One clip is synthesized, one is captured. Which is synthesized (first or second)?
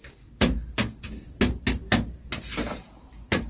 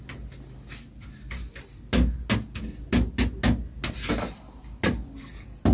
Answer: first